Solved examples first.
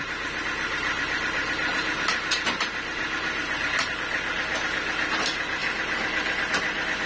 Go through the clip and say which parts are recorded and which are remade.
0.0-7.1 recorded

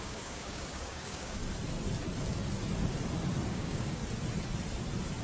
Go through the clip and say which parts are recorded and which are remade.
0.0-1.4 remade; 1.4-3.5 recorded; 3.5-4.0 remade; 4.0-5.2 recorded

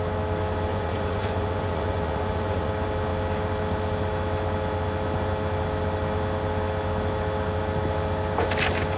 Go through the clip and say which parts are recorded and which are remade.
0.0-0.7 recorded; 0.7-2.7 remade; 2.7-9.0 recorded

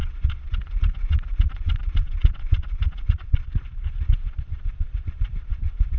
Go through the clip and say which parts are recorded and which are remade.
0.0-6.0 remade